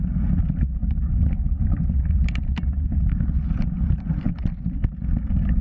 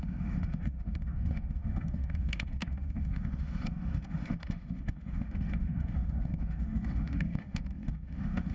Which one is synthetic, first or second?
second